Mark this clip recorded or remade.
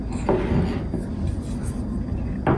recorded